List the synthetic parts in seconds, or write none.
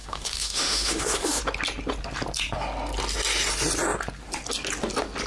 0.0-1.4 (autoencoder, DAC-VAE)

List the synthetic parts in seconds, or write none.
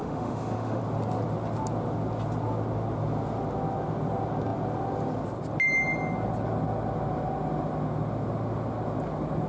0.0-0.8 (autoencoder, DAC-VAE)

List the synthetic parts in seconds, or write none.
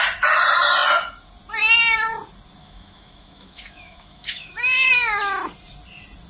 2.6-4.9 (autoencoder, DAC-VAE)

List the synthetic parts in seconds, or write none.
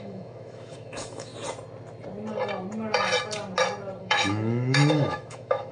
0.0-1.3 (autoencoder, DAC-VAE); 4.0-5.7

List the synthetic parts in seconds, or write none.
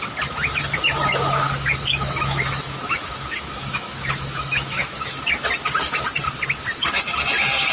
1.0-5.1 (autoencoder, DAC-VAE)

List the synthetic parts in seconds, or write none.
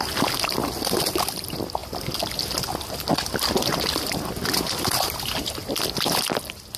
none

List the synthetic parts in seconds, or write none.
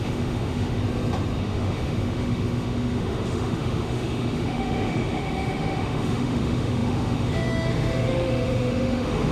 0.0-0.8 (autoencoder, DAC-VAE); 1.4-9.3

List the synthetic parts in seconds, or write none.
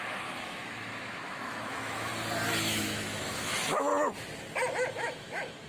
0.0-2.1 (autoencoder, DAC-VAE); 2.6-3.9; 4.9-5.7